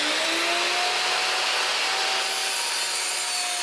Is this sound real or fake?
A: real